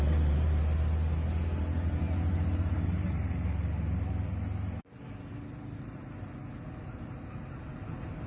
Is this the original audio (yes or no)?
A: yes